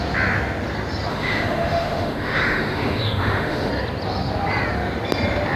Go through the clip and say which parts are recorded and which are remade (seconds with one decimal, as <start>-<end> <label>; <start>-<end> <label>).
0.0-1.1 recorded; 1.1-3.7 remade; 3.7-5.6 recorded

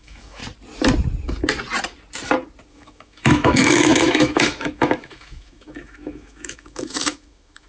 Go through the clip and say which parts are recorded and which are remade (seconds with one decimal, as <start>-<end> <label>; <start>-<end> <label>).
0.0-0.4 remade; 0.4-2.7 recorded; 2.7-7.7 remade

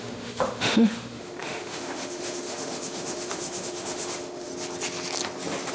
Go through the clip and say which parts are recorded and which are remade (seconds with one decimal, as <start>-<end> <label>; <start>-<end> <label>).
0.0-4.5 remade; 4.5-5.7 recorded

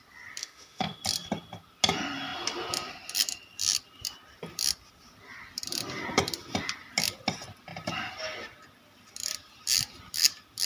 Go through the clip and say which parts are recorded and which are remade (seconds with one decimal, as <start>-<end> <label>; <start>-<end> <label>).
0.0-0.4 recorded; 0.4-1.0 remade; 1.0-10.7 recorded